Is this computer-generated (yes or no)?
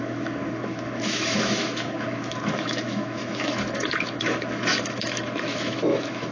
yes